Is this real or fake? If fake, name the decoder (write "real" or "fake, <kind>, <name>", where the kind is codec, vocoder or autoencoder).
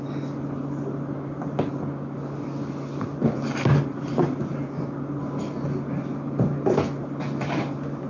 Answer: real